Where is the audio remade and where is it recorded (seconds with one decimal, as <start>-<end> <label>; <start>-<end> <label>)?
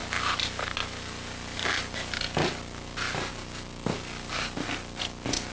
0.0-5.5 recorded